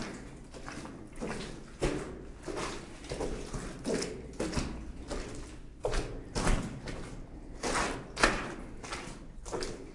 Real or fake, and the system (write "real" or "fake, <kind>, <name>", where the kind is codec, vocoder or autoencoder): real